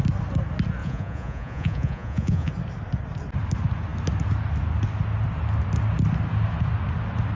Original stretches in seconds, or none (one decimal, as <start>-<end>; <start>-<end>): 0.0-0.8; 2.5-7.3